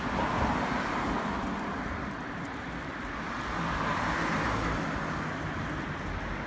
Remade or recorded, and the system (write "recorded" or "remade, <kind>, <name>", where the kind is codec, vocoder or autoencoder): recorded